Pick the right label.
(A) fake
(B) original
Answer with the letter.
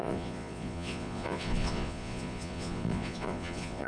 A